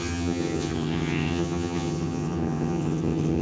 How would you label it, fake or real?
fake